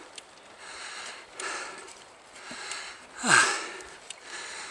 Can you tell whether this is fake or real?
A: fake